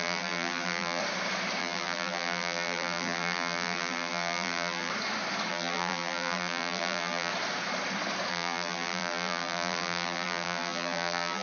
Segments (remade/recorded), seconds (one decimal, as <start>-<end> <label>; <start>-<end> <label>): 0.0-1.0 remade; 1.0-1.6 recorded; 1.6-4.9 remade; 4.9-5.5 recorded; 5.5-7.3 remade; 7.3-8.3 recorded; 8.3-11.4 remade